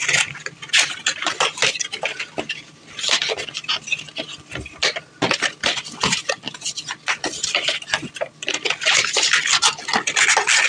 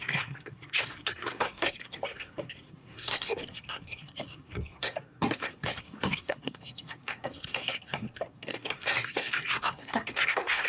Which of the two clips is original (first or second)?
first